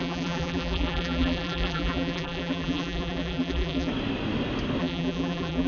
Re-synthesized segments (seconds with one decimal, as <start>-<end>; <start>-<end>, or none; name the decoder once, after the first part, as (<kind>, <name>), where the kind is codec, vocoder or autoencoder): 0.0-3.9 (vocoder, BigVGAN v2); 4.8-5.7